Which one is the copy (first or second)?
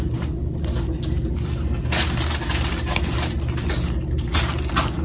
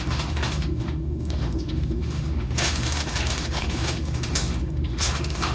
second